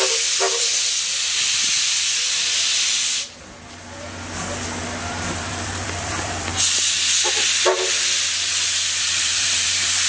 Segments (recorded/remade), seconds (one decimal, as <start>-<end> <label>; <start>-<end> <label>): 0.0-0.7 remade; 0.7-5.0 recorded; 5.0-6.5 remade; 6.5-7.9 recorded; 7.9-10.1 remade